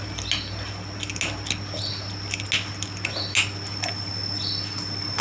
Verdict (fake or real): real